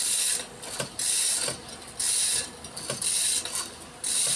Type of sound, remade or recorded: recorded